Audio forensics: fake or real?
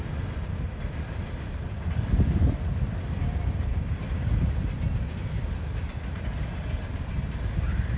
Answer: fake